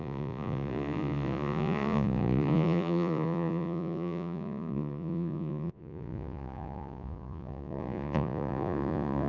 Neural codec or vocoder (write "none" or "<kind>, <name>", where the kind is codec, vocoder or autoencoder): vocoder, Vocos